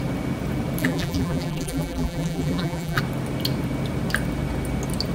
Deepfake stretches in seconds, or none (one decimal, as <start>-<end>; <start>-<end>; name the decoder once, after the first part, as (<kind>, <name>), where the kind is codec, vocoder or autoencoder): 0.8-3.0 (vocoder, BigVGAN v2)

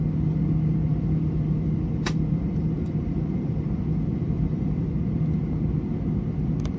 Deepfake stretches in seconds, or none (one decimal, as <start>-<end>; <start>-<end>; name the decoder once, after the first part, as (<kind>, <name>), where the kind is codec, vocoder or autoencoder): 0.9-5.0 (vocoder, BigVGAN v2)

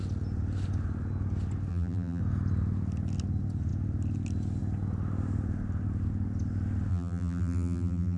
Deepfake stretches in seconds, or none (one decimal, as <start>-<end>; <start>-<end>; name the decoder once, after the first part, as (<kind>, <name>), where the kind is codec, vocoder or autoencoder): 1.7-2.2 (vocoder, BigVGAN v2); 6.9-8.2

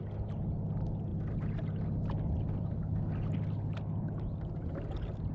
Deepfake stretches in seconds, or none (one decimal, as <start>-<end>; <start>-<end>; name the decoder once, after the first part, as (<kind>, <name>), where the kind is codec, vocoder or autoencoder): none

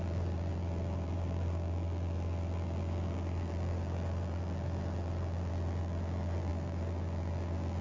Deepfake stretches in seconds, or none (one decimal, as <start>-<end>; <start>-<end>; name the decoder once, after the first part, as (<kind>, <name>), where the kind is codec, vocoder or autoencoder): 0.0-7.8 (vocoder, BigVGAN v2)

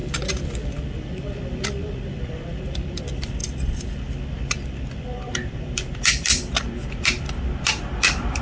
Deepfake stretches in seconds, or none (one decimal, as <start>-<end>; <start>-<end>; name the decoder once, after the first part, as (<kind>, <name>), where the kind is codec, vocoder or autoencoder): 0.0-3.0 (vocoder, BigVGAN v2); 3.4-8.4